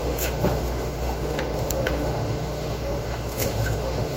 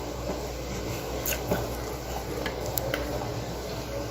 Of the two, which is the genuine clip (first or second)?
second